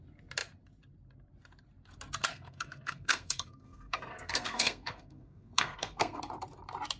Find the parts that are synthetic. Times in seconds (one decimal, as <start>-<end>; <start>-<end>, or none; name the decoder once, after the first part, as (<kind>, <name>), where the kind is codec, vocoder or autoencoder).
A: 2.3-6.2 (codec, SNAC)